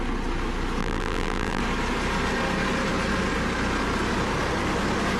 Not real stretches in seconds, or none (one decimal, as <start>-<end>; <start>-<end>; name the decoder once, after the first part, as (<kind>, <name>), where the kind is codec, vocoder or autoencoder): 0.8-1.6 (vocoder, BigVGAN v2)